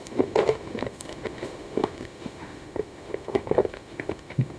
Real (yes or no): no